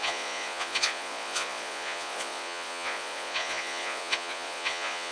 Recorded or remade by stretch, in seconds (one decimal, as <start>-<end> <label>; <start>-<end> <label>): 0.0-5.1 remade